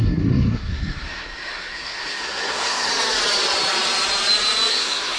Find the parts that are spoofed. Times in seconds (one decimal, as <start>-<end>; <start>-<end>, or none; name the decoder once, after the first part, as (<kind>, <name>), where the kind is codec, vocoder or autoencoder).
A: 0.0-2.9 (codec, SNAC); 4.7-5.2